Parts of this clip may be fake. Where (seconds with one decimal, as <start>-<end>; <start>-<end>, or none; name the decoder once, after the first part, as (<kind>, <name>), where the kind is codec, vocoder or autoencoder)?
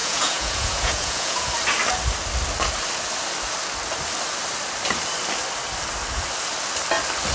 0.0-1.5 (vocoder, Vocos)